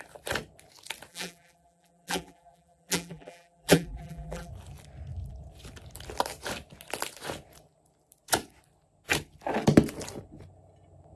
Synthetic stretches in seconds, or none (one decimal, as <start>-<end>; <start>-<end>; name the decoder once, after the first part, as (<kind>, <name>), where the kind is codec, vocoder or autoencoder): 1.1-4.5 (vocoder, BigVGAN v2)